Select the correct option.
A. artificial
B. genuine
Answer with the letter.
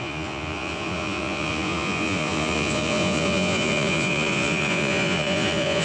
A